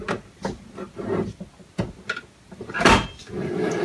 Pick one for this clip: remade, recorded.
recorded